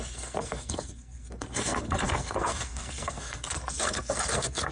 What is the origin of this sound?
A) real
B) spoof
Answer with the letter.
B